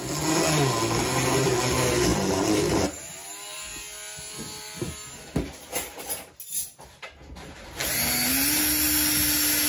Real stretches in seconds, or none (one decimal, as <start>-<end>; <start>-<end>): 0.0-9.7